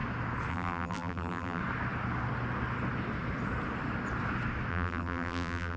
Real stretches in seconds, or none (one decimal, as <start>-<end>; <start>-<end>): 0.0-0.5; 1.6-4.7